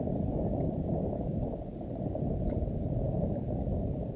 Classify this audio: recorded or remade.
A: remade